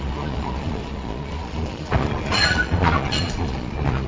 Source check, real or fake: fake